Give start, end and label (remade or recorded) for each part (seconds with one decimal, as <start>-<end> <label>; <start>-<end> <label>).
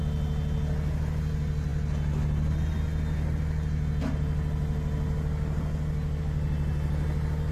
0.0-7.5 recorded